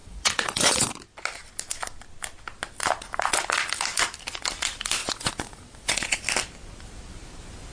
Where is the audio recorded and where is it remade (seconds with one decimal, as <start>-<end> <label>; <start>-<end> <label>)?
0.0-0.9 remade; 0.9-5.0 recorded; 5.0-6.2 remade; 6.2-7.7 recorded